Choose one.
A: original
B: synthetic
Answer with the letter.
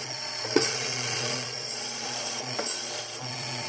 B